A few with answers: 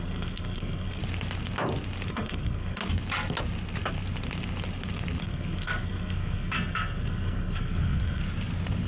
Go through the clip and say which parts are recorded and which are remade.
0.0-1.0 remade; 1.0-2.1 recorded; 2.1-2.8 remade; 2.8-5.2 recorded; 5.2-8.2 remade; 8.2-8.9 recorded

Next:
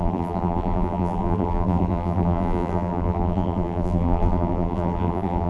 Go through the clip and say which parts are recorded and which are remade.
0.0-5.5 remade

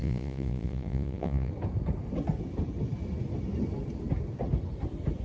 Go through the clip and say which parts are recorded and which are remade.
0.0-1.5 remade; 1.5-5.2 recorded